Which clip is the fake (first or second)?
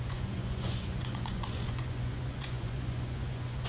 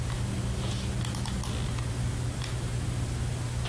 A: first